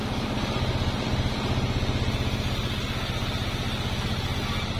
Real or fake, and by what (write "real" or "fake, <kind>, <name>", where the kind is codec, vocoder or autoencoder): real